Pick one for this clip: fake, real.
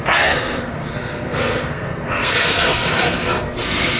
fake